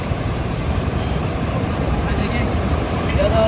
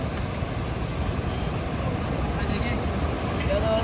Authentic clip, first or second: second